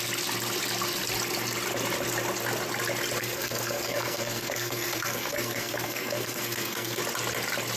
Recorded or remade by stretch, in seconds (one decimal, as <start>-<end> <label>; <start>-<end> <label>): 0.0-3.2 recorded; 3.2-7.0 remade; 7.0-7.8 recorded